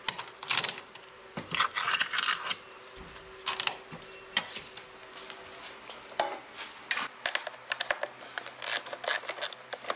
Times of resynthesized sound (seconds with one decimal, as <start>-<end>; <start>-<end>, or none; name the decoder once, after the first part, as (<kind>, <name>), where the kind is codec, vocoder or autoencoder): none